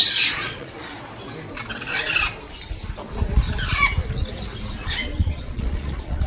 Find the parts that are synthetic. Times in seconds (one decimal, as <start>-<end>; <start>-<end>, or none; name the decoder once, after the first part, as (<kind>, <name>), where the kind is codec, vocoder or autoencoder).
0.0-0.9 (vocoder, Vocos); 4.7-6.3